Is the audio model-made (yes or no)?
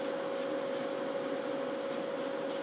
no